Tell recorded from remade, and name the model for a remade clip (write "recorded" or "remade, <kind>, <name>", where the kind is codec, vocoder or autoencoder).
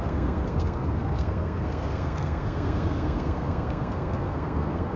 remade, codec, SNAC